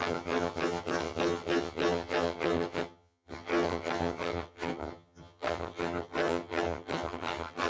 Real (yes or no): no